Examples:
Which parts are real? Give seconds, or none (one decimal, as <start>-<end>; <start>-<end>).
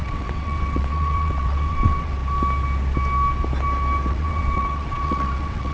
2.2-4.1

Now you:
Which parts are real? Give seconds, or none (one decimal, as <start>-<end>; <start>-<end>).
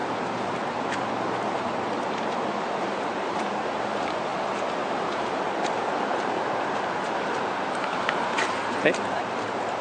none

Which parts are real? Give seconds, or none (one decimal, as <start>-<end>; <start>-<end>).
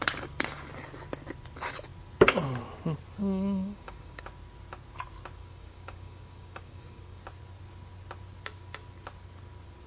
0.0-3.2; 4.2-5.4; 7.2-9.9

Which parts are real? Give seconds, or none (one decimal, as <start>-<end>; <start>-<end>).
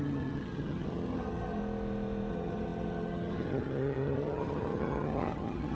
1.6-2.3